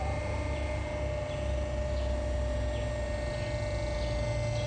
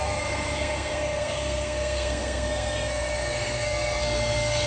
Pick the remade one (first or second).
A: second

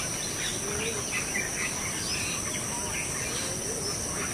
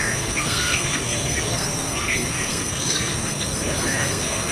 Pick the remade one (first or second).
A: second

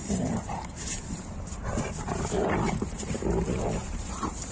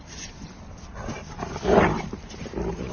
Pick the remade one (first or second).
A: first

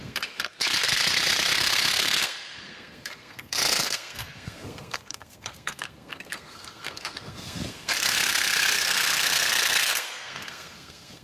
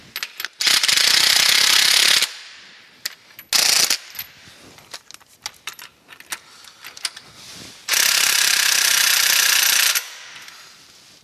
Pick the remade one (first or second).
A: first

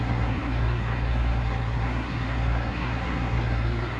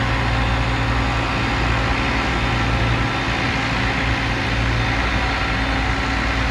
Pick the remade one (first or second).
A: first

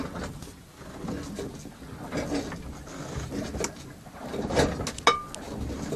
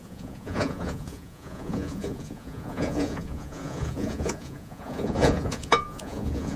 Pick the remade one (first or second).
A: second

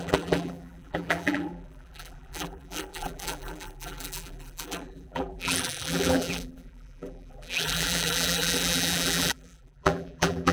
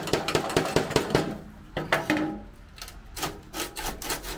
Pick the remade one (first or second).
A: first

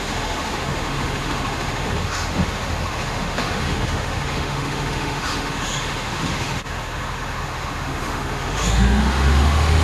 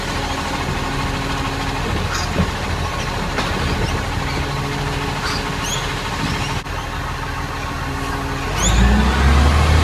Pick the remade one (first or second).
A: first